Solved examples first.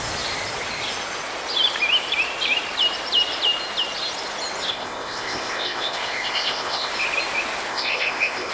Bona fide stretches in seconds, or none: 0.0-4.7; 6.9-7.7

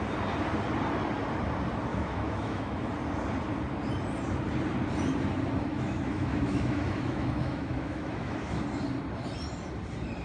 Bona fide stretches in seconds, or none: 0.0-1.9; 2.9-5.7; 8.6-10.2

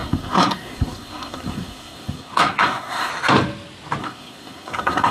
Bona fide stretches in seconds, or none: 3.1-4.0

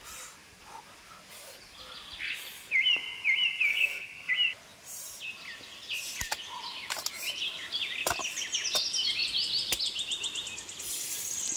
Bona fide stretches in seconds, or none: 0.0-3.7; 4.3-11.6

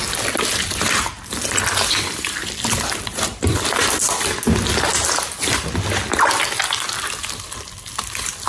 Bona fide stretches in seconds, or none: 0.0-0.5; 4.0-8.5

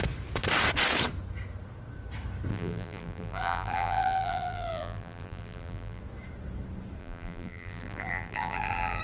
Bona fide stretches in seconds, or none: 0.0-2.5; 6.0-7.0

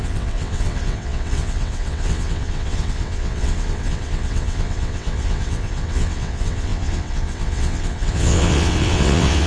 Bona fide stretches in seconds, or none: none